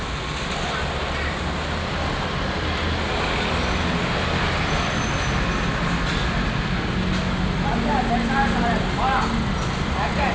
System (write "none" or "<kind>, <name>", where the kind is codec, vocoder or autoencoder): none